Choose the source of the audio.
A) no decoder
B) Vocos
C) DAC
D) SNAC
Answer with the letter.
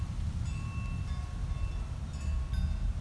A